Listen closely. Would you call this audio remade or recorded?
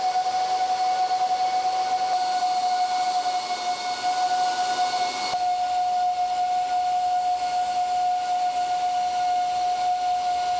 recorded